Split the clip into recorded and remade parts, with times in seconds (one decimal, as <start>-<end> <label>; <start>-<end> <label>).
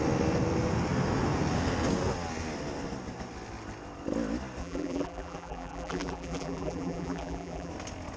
0.0-4.6 recorded; 4.6-7.7 remade; 7.7-8.2 recorded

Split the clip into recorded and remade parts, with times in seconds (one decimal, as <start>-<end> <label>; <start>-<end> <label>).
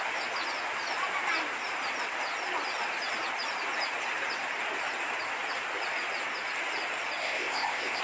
0.0-7.2 recorded; 7.2-8.0 remade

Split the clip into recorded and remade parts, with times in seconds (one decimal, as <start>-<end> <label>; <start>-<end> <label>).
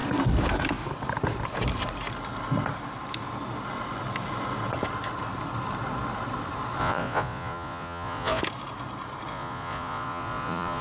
0.0-6.8 recorded; 6.8-8.4 remade; 8.4-9.3 recorded; 9.3-10.8 remade